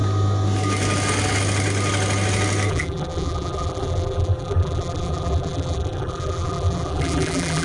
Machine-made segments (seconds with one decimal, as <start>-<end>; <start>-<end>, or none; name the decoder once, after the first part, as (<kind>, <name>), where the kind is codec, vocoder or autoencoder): 2.7-7.6 (vocoder, BigVGAN v2)